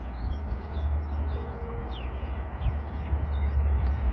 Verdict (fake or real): real